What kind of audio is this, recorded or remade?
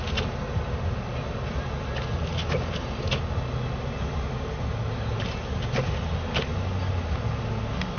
recorded